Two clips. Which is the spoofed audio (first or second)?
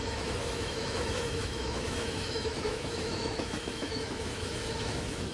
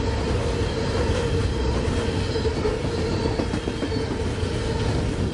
first